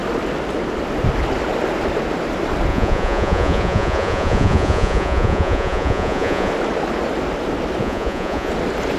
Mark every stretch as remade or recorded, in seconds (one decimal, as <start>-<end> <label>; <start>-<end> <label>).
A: 0.0-2.7 recorded; 2.7-6.5 remade; 6.5-7.8 recorded; 7.8-8.5 remade; 8.5-9.0 recorded